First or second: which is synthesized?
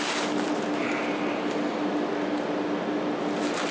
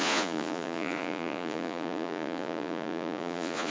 second